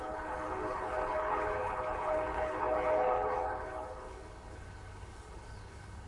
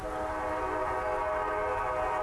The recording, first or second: second